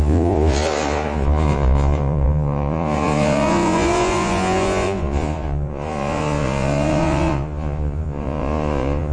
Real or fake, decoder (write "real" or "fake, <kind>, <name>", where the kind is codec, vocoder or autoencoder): fake, vocoder, Vocos